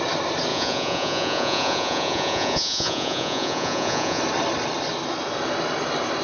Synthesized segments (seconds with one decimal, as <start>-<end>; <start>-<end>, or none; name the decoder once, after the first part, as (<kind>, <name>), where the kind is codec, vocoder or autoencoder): 0.5-4.2 (vocoder, Vocos)